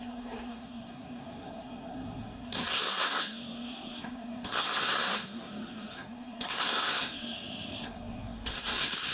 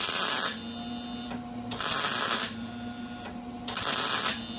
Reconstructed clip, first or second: first